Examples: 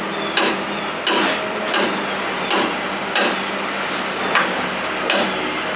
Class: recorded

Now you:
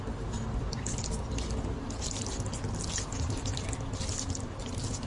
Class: recorded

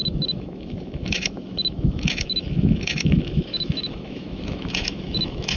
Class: remade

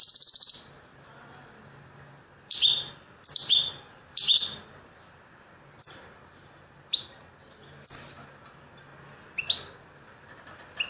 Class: remade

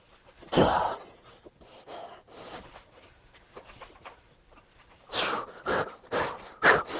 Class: remade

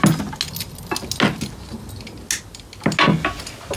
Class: recorded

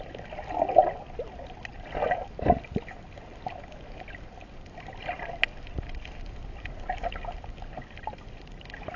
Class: recorded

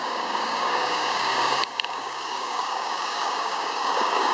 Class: remade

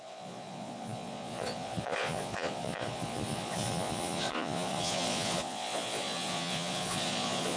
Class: remade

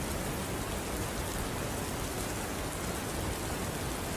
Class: recorded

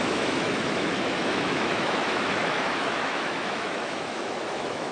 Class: remade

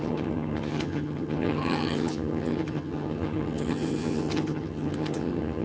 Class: remade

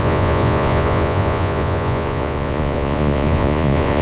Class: remade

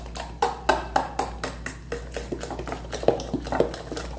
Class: recorded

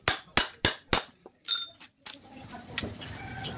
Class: recorded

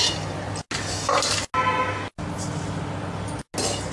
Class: recorded